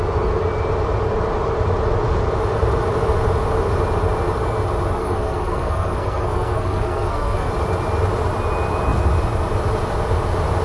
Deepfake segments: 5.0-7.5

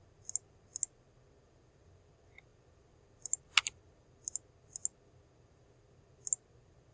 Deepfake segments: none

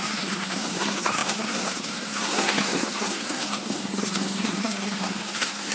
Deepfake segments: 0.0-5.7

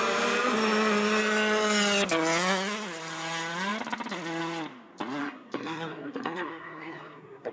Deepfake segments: 5.2-7.5

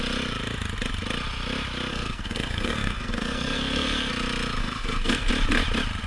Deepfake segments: 1.9-4.1; 4.6-5.3

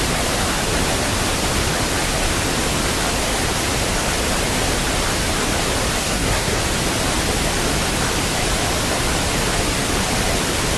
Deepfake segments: 6.0-6.6

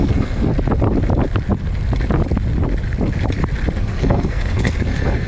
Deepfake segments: 0.0-0.5; 3.7-5.3